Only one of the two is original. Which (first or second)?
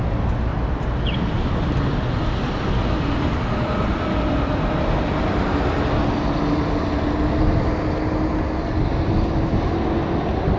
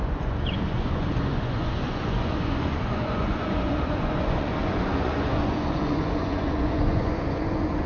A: first